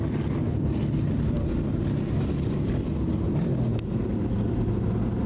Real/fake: real